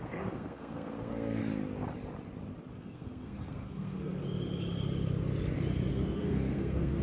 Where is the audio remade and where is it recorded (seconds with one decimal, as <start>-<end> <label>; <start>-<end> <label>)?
0.0-1.4 remade; 1.4-2.8 recorded; 2.8-4.1 remade; 4.1-5.9 recorded; 5.9-7.0 remade